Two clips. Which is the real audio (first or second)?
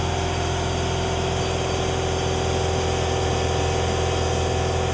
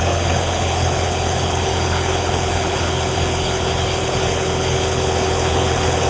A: first